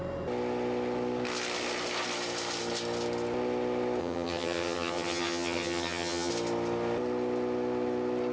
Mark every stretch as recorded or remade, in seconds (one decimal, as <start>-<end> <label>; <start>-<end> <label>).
0.0-4.0 recorded; 4.0-6.3 remade; 6.3-8.3 recorded